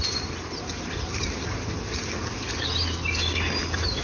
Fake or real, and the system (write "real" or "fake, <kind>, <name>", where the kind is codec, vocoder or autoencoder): real